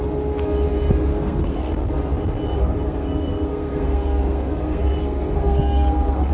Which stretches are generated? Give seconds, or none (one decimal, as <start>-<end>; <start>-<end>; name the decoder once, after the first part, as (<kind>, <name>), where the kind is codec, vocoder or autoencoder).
1.1-1.9 (codec, SNAC); 2.6-6.3